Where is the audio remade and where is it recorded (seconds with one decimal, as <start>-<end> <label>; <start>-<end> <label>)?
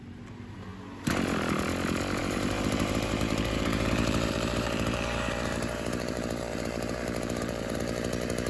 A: 0.0-0.7 remade; 0.7-2.2 recorded; 2.2-8.5 remade